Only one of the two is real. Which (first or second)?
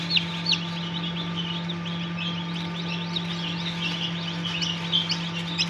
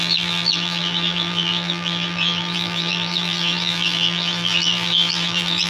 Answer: first